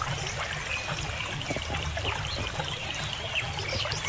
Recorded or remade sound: recorded